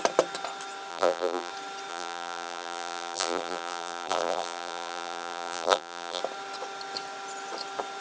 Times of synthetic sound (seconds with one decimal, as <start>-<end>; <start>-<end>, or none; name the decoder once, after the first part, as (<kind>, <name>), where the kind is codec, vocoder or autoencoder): 0.9-1.5 (vocoder, BigVGAN v2); 1.9-6.2